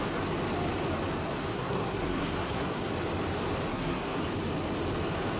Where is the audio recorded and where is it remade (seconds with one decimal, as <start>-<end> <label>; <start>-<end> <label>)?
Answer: 0.0-1.5 recorded; 1.5-2.9 remade; 2.9-3.7 recorded; 3.7-4.2 remade; 4.2-5.4 recorded